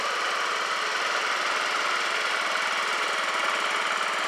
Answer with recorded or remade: recorded